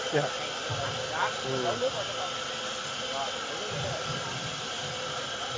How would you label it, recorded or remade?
recorded